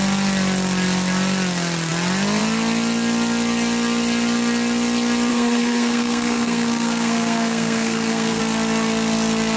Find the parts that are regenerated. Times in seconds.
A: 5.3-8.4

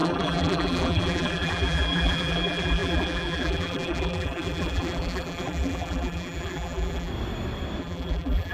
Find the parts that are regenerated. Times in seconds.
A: 0.0-7.1; 7.8-8.5

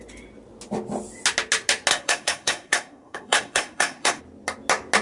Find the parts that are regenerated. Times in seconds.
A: 1.9-4.2

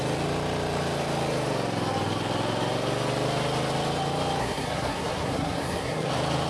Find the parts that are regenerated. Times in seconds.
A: 4.4-6.1

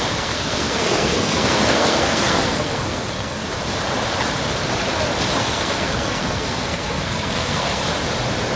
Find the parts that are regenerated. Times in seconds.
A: 0.0-3.4; 5.4-7.8

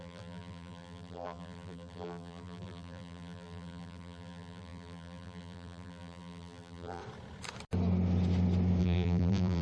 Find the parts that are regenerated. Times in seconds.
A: 0.0-7.0; 8.8-9.6

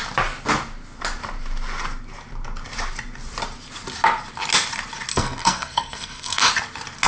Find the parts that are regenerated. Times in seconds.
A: 5.1-6.5

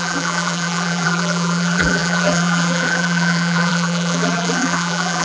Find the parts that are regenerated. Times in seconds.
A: 0.0-5.2